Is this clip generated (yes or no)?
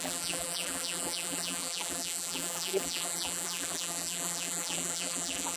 yes